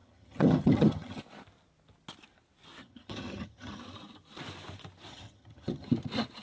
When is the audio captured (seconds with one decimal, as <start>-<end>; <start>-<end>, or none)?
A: 1.2-2.8; 3.8-5.1; 5.9-6.4